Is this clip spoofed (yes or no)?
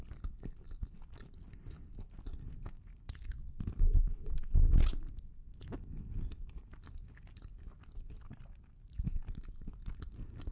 no